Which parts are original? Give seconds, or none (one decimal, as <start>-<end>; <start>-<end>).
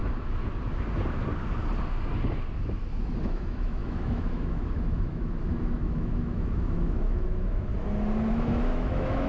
0.0-3.2; 7.7-8.3